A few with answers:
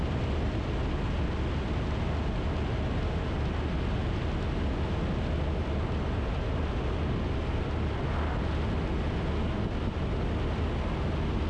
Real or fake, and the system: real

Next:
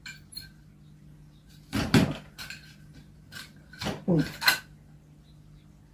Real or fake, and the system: real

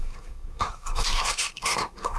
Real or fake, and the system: fake, codec, SNAC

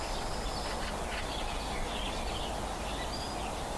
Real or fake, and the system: fake, vocoder, BigVGAN v2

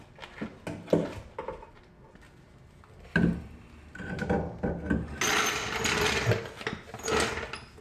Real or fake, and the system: real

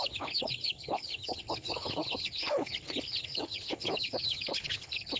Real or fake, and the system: fake, codec, HILCodec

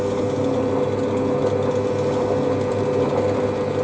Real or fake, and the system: real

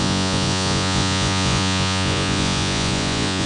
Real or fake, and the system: fake, vocoder, Vocos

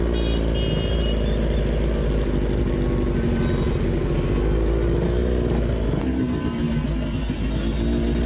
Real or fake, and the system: real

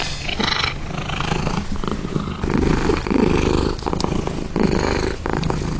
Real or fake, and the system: real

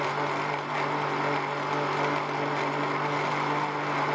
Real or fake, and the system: real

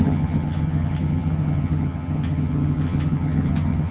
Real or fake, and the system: fake, vocoder, HiFi-GAN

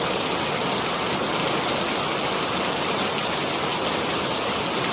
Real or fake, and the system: real